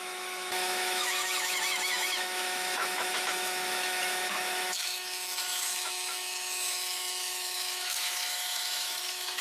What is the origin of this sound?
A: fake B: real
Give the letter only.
A